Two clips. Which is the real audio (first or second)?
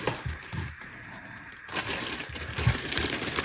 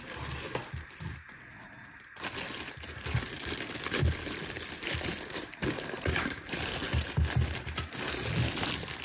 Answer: second